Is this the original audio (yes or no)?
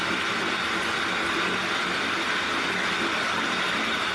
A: yes